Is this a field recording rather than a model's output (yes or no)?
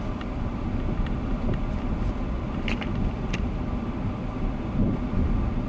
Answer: no